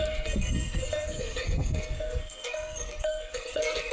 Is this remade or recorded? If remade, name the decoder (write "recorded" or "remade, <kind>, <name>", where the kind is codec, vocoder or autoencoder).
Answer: remade, codec, SNAC